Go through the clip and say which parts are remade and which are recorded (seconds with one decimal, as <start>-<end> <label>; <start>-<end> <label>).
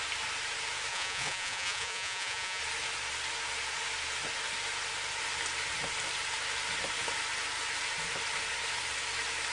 0.0-0.9 recorded; 0.9-2.6 remade; 2.6-9.5 recorded